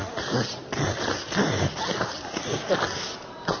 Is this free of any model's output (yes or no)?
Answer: yes